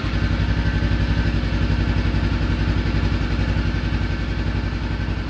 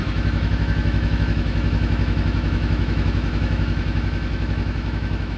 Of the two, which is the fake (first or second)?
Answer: second